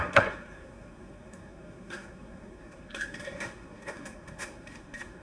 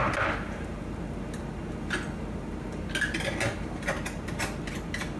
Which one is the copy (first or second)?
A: first